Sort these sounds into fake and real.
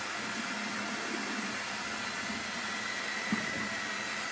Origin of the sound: real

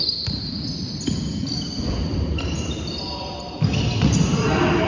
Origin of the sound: real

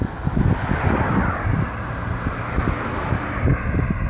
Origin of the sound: real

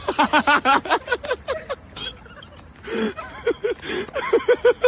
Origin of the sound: real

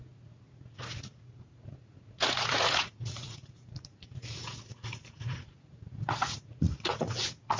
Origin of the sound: fake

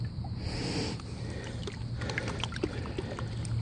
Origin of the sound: real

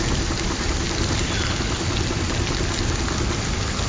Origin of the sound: real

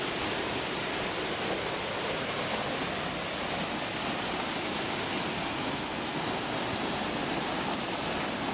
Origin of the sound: real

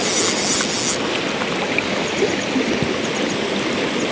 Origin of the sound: real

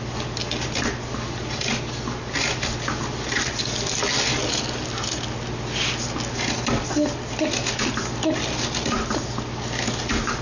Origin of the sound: real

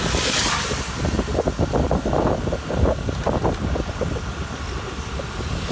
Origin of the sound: real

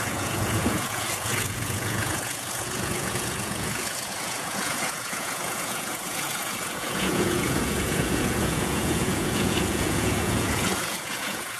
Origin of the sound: fake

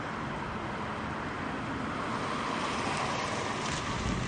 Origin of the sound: real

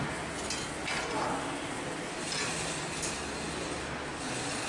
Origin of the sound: real